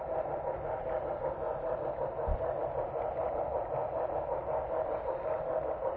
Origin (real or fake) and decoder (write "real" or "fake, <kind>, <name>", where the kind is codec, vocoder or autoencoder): real